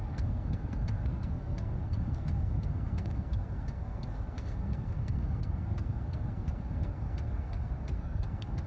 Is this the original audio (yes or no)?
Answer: no